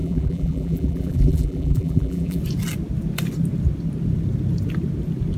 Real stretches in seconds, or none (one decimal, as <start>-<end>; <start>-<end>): 2.4-5.4